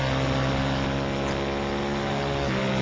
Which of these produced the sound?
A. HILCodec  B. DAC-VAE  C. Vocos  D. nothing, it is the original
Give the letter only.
D